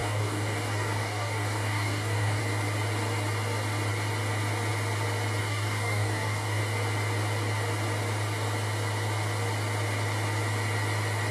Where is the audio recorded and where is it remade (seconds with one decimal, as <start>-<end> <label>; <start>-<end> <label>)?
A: 0.0-2.4 remade; 2.4-5.4 recorded; 5.4-6.6 remade; 6.6-11.3 recorded